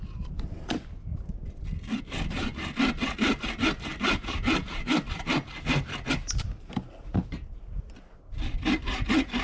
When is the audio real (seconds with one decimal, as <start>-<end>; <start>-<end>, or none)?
0.0-9.4